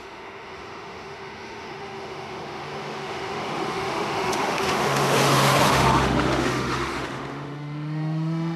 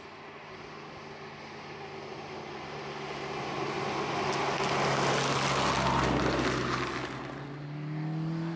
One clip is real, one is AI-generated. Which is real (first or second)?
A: second